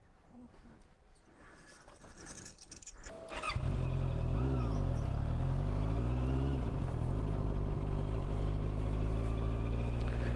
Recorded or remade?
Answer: recorded